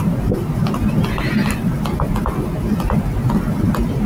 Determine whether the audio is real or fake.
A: real